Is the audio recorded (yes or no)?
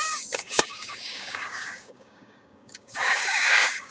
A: no